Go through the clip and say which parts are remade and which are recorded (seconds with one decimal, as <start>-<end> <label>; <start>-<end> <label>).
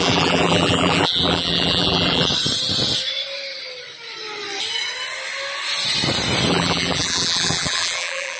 0.0-2.3 remade; 2.3-6.5 recorded; 6.5-8.4 remade